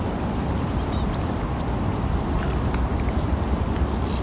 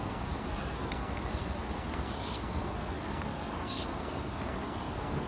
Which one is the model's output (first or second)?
second